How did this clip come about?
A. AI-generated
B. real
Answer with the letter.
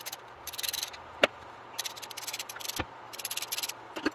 B